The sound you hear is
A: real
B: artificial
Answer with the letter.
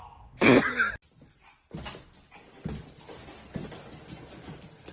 A